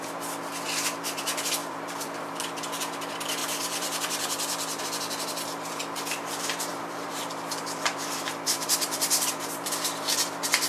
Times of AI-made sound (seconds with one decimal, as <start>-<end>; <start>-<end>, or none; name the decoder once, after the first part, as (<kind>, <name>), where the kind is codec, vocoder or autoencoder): 1.6-2.3 (vocoder, BigVGAN v2); 3.4-4.8; 6.7-10.7